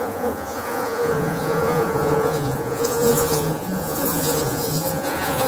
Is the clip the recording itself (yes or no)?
no